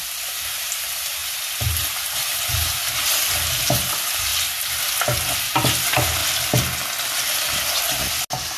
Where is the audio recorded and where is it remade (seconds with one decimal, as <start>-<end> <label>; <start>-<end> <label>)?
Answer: 0.0-1.2 remade; 1.2-3.9 recorded; 3.9-4.3 remade; 4.3-5.4 recorded; 5.4-6.2 remade; 6.2-8.6 recorded

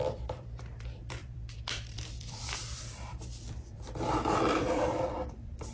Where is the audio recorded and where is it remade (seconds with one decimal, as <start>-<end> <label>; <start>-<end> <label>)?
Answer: 0.0-5.7 remade

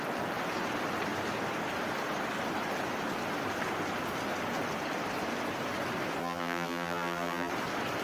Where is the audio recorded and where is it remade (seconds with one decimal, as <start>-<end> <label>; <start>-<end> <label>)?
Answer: 0.0-6.2 recorded; 6.2-7.5 remade; 7.5-8.0 recorded

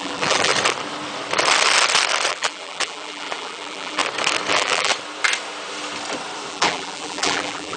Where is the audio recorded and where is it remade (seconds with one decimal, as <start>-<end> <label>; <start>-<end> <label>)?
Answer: 0.0-0.5 remade; 0.5-2.3 recorded; 2.3-4.0 remade; 4.0-4.5 recorded; 4.5-4.9 remade; 4.9-6.5 recorded; 6.5-7.8 remade